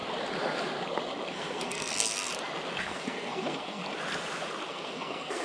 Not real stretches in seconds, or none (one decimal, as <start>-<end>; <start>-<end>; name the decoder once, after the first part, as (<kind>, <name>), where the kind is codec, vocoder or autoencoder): 1.3-2.3 (codec, SNAC); 2.8-3.8; 4.7-5.4